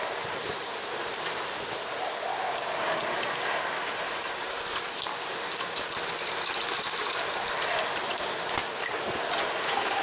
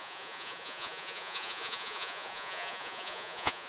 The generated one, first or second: second